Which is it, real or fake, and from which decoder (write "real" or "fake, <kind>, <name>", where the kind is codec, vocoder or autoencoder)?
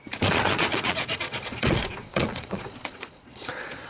fake, vocoder, Vocos